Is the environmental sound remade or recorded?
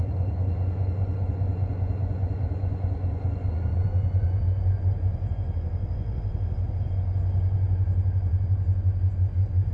remade